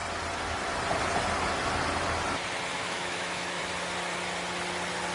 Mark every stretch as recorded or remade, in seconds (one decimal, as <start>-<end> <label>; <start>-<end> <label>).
0.0-2.7 recorded; 2.7-3.6 remade; 3.6-5.1 recorded